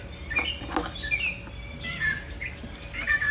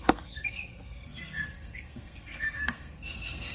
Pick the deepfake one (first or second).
second